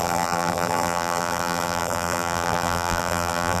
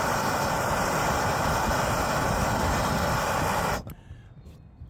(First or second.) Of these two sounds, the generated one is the first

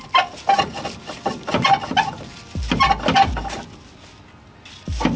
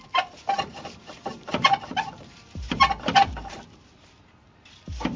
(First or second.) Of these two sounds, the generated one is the second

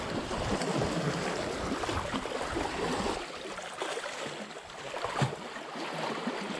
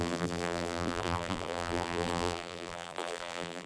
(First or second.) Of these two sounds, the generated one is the second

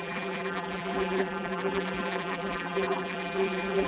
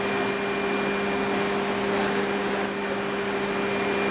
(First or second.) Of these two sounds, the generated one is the first